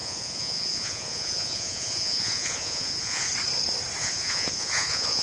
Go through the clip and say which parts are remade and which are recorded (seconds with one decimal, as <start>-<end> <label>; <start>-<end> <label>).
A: 0.0-3.3 remade; 3.3-4.0 recorded; 4.0-5.2 remade